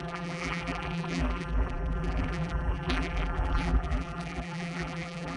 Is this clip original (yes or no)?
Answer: no